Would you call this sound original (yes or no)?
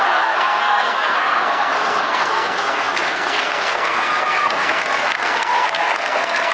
no